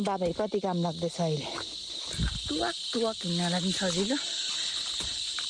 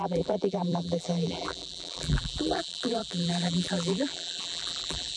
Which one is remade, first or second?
second